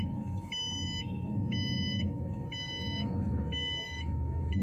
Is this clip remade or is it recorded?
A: remade